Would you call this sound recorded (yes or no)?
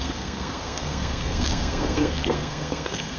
no